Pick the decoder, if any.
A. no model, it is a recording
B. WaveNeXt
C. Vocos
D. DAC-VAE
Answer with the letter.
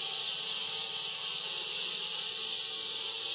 A